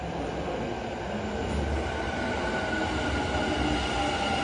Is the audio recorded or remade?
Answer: recorded